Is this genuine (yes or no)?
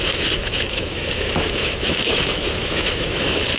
no